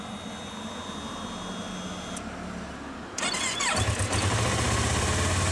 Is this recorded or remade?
recorded